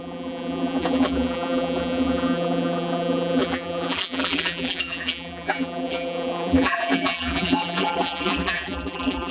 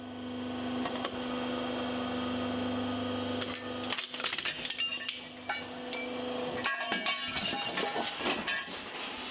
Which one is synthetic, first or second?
first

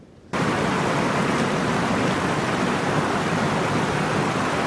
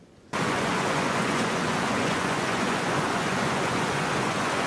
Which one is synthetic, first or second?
second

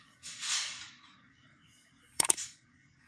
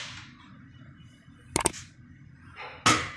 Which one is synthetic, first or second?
first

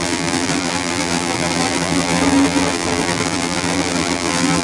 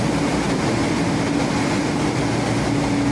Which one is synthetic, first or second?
first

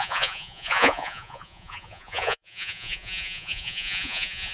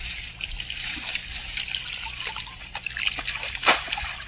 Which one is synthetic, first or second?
first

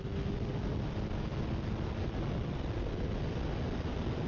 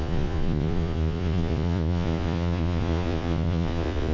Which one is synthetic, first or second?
second